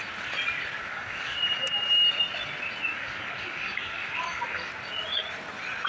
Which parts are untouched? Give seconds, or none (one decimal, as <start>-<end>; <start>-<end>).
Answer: 0.0-0.9; 1.7-2.9; 4.7-5.9